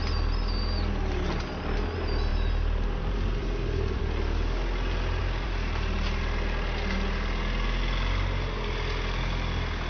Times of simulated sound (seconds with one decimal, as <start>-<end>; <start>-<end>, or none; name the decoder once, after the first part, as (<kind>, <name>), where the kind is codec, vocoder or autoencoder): 2.3-4.0 (vocoder, BigVGAN v2); 5.2-6.2

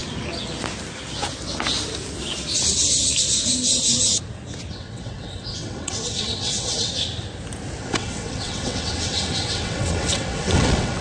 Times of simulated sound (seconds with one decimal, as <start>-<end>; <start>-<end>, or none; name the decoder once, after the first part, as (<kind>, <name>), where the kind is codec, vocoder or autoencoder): 4.7-6.9 (vocoder, WaveNeXt); 7.8-11.0

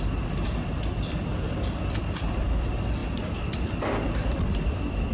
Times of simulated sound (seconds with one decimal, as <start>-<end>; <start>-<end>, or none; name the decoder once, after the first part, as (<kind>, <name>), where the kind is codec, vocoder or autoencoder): 3.0-5.1 (vocoder, BigVGAN v2)

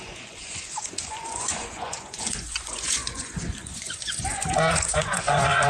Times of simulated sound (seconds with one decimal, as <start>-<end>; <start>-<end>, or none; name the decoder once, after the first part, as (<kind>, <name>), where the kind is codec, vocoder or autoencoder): 0.0-5.7 (vocoder, Vocos)